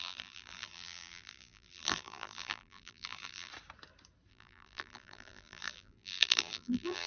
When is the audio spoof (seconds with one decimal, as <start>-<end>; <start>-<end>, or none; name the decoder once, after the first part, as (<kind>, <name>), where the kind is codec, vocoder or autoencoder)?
0.0-3.5 (vocoder, BigVGAN v2); 4.3-7.1